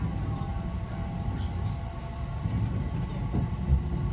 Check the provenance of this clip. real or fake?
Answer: real